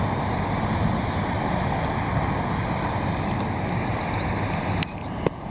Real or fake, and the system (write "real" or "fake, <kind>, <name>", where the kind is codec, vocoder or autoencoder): real